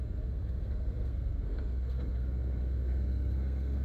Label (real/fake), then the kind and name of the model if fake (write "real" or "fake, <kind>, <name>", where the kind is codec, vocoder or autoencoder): fake, codec, SNAC